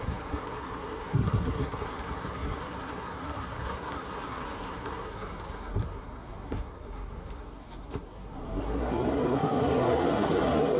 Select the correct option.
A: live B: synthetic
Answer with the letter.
B